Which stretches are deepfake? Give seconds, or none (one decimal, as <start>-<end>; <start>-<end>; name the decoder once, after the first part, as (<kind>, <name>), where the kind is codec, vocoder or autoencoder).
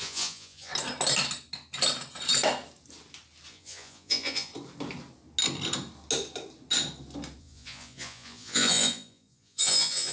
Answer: 0.0-0.7 (vocoder, Vocos); 3.5-4.5; 7.4-10.1